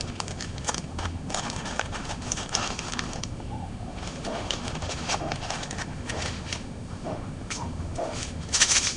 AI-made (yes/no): yes